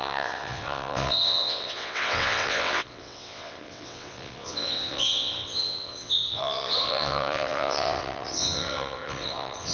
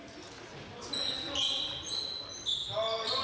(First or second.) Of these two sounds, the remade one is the first